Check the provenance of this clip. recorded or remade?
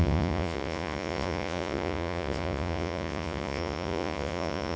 remade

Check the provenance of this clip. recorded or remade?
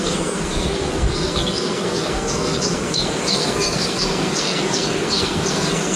remade